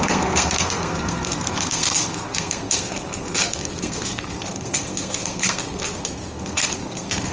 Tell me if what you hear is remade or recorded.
remade